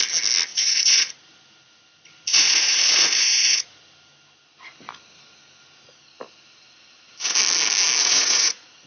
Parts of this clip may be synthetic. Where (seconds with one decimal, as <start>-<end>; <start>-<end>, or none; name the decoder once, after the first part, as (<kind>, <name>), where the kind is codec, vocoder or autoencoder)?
0.5-1.4 (vocoder, Vocos); 2.3-3.8; 8.0-8.9